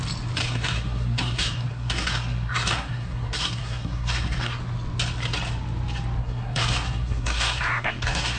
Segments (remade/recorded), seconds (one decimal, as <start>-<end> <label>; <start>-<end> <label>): 0.0-0.4 recorded; 0.4-4.6 remade; 4.6-6.2 recorded; 6.2-8.4 remade